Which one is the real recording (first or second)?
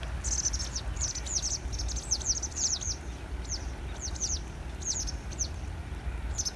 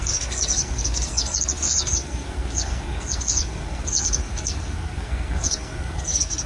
first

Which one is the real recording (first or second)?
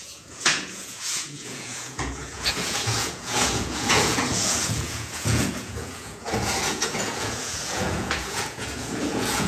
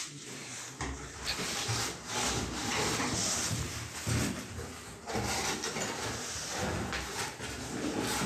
second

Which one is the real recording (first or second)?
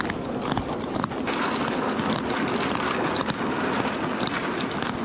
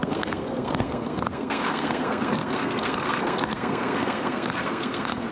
first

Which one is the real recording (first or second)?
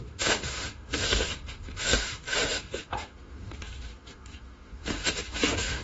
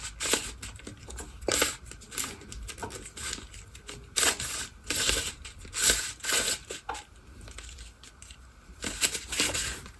second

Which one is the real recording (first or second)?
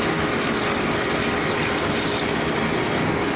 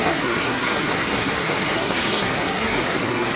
first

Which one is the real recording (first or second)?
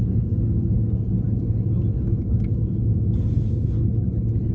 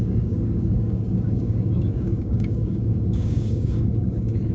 first